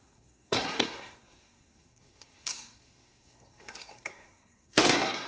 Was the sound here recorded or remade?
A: remade